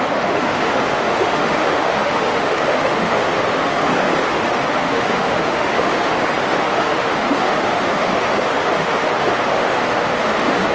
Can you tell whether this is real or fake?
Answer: fake